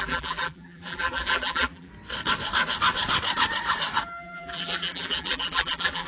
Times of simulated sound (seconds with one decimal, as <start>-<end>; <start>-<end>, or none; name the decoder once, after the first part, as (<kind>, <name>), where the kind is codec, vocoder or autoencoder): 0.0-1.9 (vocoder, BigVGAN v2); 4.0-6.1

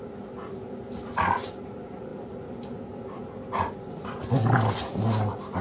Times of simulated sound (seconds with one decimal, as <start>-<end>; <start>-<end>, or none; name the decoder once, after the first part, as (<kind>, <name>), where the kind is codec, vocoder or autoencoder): none

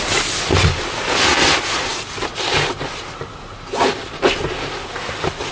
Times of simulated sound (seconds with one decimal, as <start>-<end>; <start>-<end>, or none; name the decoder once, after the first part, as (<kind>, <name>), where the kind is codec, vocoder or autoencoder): none